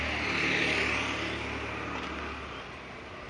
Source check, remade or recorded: recorded